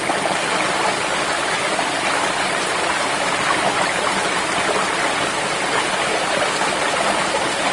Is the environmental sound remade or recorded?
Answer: recorded